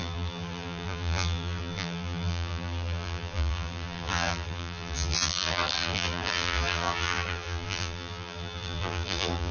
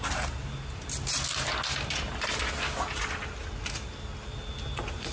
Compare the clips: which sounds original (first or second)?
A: second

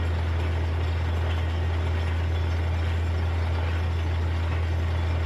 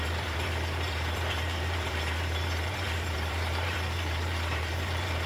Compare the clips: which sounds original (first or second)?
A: first